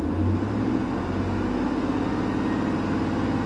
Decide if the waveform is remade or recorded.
recorded